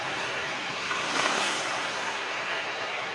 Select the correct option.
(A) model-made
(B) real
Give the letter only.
A